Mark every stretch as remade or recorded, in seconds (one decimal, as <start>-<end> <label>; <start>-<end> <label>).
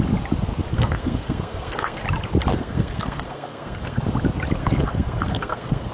0.0-0.7 recorded; 0.7-2.0 remade; 2.0-2.5 recorded; 2.5-4.0 remade; 4.0-4.6 recorded; 4.6-5.9 remade